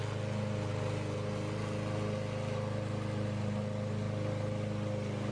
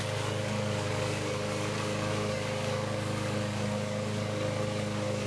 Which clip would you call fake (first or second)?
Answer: second